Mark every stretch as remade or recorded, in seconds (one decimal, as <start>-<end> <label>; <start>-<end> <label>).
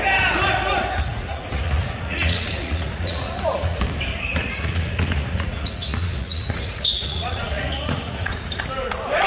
0.0-1.1 recorded; 1.1-3.8 remade; 3.8-4.3 recorded; 4.3-8.6 remade; 8.6-9.3 recorded